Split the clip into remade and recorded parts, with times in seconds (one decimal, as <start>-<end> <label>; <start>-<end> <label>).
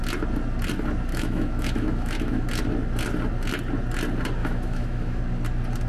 0.0-1.1 recorded; 1.1-2.4 remade; 2.4-4.4 recorded; 4.4-5.2 remade; 5.2-5.9 recorded